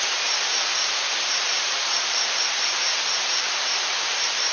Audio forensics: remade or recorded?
remade